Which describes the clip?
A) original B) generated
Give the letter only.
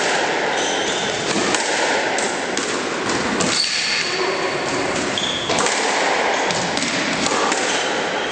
A